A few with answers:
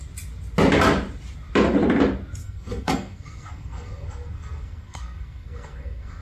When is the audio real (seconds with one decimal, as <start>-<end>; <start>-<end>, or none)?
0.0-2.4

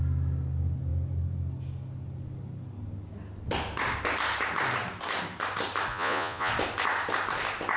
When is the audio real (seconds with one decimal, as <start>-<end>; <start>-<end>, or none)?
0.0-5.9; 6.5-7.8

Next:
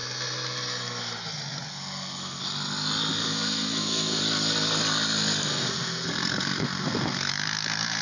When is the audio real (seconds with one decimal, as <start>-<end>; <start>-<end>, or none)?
0.0-1.7; 2.4-3.2; 4.2-5.5; 7.3-8.0